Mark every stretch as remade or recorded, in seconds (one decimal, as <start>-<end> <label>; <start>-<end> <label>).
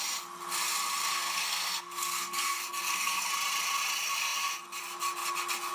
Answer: 0.0-1.1 recorded; 1.1-3.3 remade; 3.3-5.7 recorded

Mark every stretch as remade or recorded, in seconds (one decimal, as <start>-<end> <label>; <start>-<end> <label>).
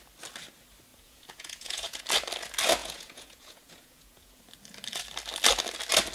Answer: 0.0-0.9 recorded; 0.9-2.0 remade; 2.0-2.8 recorded; 2.8-4.4 remade; 4.4-6.1 recorded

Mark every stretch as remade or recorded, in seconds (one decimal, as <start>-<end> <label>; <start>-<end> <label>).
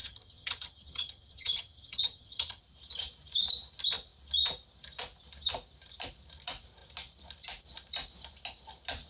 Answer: 0.0-2.6 remade; 2.6-9.1 recorded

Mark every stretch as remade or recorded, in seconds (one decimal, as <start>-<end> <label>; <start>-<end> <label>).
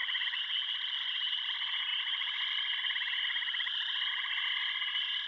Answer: 0.0-5.3 recorded